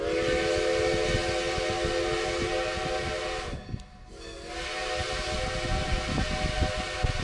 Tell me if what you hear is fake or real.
real